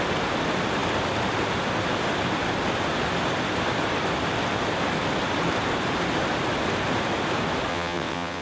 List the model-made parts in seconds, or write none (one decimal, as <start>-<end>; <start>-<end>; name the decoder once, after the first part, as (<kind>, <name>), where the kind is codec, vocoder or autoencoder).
7.7-8.4 (vocoder, WaveNeXt)